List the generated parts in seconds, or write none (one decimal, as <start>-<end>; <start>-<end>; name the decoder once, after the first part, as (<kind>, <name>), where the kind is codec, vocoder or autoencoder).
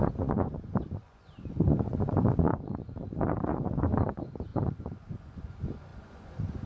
0.0-6.7 (vocoder, Vocos)